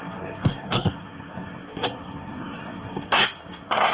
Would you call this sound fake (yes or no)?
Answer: yes